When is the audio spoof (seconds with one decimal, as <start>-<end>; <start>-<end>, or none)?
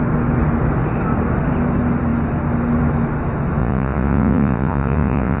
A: 3.6-5.4